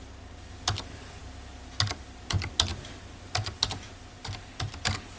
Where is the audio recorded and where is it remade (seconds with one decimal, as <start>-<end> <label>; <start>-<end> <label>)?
0.0-5.2 recorded